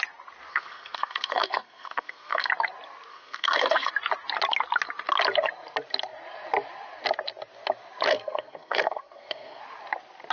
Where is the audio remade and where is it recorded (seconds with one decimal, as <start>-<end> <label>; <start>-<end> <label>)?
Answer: 0.0-0.5 recorded; 0.5-2.5 remade; 2.5-3.1 recorded; 3.1-3.9 remade; 3.9-8.1 recorded; 8.1-9.6 remade; 9.6-10.3 recorded